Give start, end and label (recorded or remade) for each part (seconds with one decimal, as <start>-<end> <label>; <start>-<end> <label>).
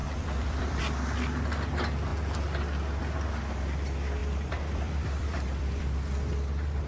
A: 0.0-0.8 remade; 0.8-4.2 recorded; 4.2-5.8 remade; 5.8-6.9 recorded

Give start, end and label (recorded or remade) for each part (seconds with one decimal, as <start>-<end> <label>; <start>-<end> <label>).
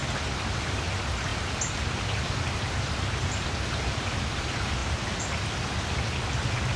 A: 0.0-6.8 recorded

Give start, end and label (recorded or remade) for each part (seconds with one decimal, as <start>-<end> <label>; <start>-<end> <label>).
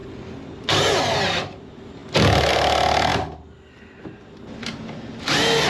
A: 0.0-5.7 recorded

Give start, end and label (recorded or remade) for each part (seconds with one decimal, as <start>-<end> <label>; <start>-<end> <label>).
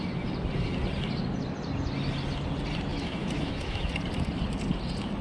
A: 0.0-2.9 recorded; 2.9-3.9 remade; 3.9-5.2 recorded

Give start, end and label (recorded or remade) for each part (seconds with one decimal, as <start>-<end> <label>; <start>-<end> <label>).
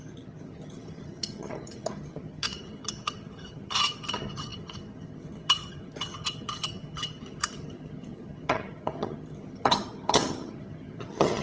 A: 0.0-11.4 remade